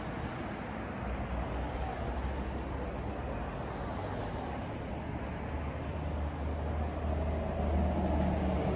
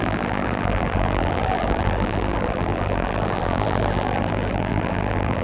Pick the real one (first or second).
first